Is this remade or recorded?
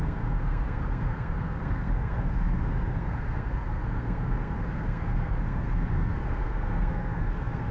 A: remade